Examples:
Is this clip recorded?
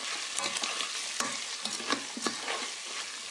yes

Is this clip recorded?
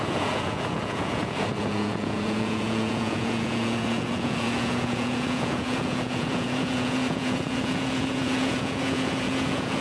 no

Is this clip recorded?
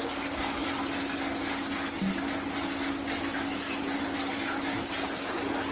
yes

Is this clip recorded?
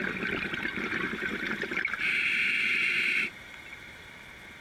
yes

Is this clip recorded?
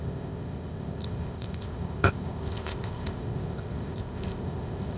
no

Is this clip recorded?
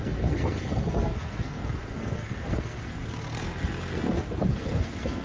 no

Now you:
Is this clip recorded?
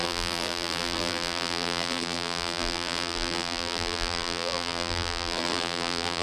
no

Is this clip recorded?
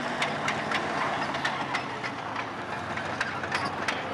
yes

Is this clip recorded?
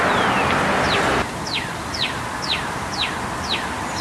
yes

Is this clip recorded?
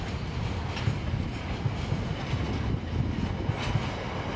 yes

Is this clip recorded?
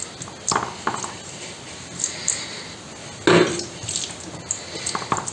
yes